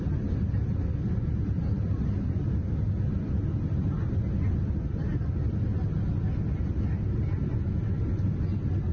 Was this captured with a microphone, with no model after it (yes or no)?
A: yes